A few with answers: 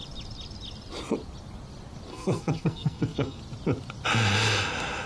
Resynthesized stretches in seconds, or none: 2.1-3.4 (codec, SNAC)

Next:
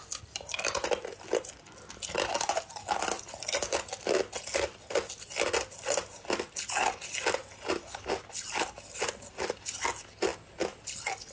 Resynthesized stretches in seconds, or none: none

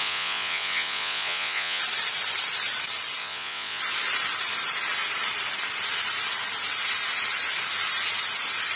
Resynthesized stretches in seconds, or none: 0.0-1.8 (vocoder, Vocos); 3.2-3.8

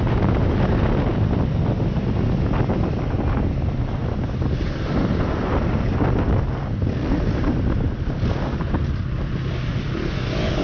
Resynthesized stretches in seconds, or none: none

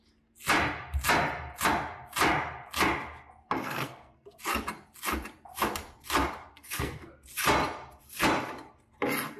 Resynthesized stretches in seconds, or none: 3.6-4.4 (codec, SNAC); 6.5-7.1